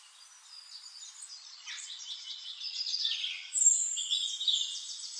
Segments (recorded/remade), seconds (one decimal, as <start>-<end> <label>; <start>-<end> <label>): 0.0-1.3 recorded; 1.3-4.3 remade; 4.3-5.2 recorded